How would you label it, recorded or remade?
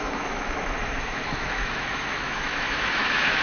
remade